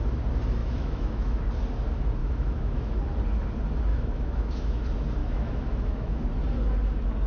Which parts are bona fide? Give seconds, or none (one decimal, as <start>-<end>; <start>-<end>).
0.0-0.6; 1.4-2.2; 3.0-3.9; 4.8-5.2; 6.2-7.3